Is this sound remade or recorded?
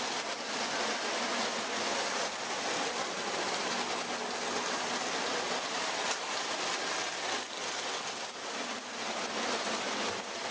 recorded